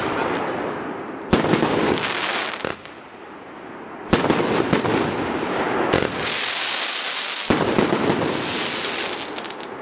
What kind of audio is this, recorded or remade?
recorded